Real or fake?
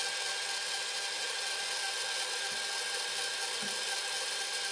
real